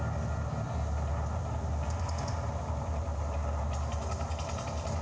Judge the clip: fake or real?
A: real